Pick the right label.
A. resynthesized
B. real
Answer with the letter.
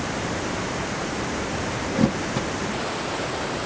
A